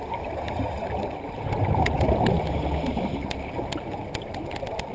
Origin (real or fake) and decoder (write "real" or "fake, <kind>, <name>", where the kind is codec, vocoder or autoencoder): real